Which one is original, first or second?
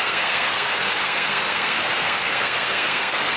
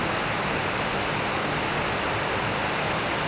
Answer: second